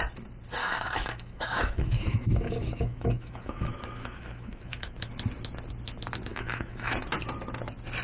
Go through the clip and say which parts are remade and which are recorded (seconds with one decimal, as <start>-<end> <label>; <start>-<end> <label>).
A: 0.0-0.6 recorded; 0.6-5.1 remade; 5.1-6.3 recorded; 6.3-6.9 remade; 6.9-8.0 recorded